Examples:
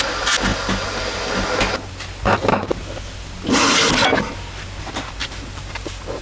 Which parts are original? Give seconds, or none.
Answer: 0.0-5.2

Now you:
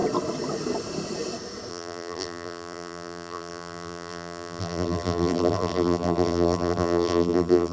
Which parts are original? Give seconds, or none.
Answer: 0.0-1.7

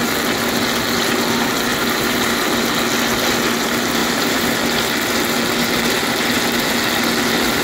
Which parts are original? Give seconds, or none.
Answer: 0.0-1.7; 2.3-4.0; 4.5-7.6